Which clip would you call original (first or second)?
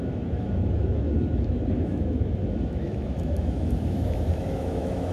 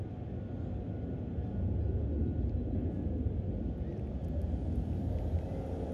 second